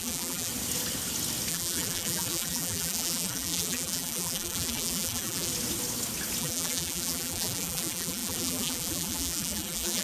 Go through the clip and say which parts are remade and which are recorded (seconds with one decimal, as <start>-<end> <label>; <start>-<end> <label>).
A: 0.0-0.5 remade; 0.5-1.5 recorded; 1.5-5.5 remade; 5.5-6.4 recorded; 6.4-10.0 remade